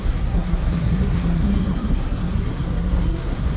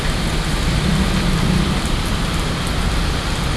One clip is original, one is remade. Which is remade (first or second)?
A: first